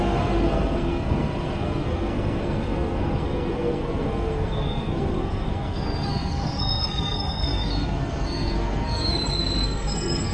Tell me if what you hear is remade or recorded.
remade